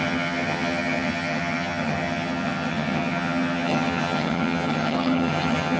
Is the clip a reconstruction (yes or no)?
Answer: yes